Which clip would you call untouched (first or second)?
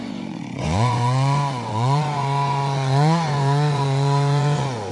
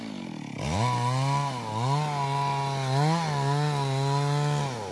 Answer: second